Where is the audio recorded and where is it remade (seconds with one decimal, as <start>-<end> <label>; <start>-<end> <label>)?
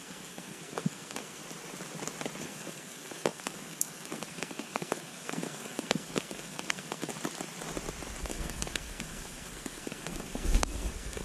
0.0-1.4 remade; 1.4-2.4 recorded; 2.4-7.1 remade; 7.1-8.2 recorded; 8.2-11.2 remade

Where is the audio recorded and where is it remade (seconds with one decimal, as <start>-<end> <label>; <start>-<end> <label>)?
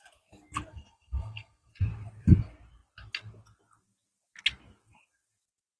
0.0-0.7 recorded; 0.7-1.7 remade; 1.7-5.8 recorded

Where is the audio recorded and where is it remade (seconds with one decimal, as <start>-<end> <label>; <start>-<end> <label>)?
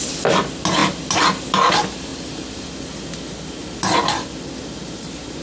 0.0-5.4 recorded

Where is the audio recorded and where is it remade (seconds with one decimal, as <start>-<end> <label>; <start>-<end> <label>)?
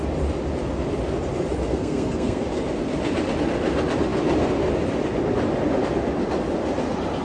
0.0-1.7 recorded; 1.7-2.4 remade; 2.4-7.2 recorded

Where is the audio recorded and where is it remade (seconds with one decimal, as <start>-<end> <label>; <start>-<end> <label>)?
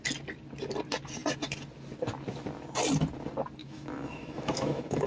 0.0-3.6 recorded; 3.6-5.1 remade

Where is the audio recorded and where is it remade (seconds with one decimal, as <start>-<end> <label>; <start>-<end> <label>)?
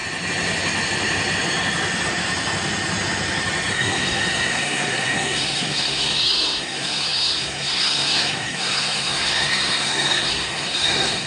0.0-3.7 recorded; 3.7-11.3 remade